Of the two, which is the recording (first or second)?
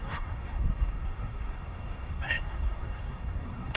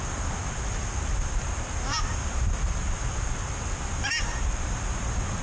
second